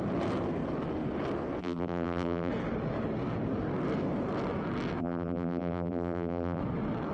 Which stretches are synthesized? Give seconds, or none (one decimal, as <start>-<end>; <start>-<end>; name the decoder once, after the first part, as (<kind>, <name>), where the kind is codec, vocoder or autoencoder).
1.6-2.5 (vocoder, BigVGAN v2); 5.0-6.6